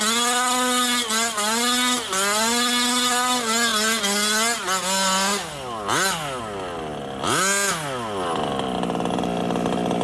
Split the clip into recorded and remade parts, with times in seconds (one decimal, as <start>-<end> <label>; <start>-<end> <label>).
0.0-10.0 recorded